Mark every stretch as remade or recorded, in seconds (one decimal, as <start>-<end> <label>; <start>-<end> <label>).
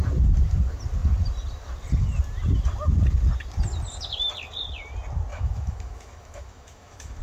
0.0-5.3 recorded; 5.3-7.2 remade